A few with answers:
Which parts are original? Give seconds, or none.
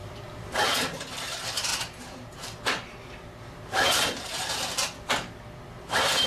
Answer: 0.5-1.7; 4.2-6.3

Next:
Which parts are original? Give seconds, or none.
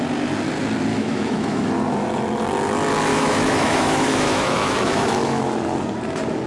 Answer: 0.0-0.9; 1.7-3.1; 5.4-6.5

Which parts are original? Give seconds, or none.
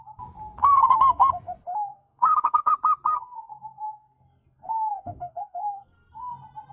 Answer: 0.0-0.6; 1.3-1.9; 2.7-3.1; 6.3-6.7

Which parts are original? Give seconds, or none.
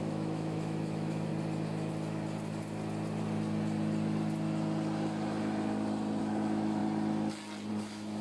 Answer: 1.3-6.2; 6.8-7.7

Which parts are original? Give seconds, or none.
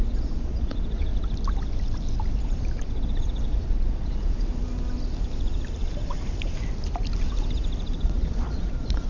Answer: 1.1-2.8; 4.6-8.0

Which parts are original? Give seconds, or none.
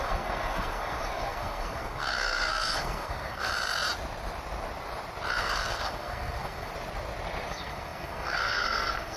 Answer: 3.5-5.4; 6.7-7.5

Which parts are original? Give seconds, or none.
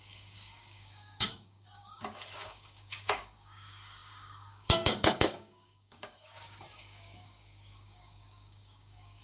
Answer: none